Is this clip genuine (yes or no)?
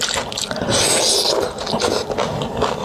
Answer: yes